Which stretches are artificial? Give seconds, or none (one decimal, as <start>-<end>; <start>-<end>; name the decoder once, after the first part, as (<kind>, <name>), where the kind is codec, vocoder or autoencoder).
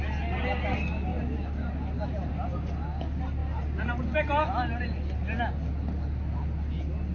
none